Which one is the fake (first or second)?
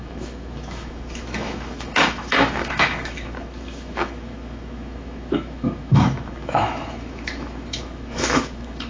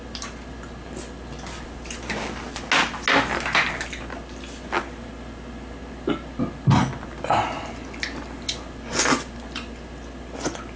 first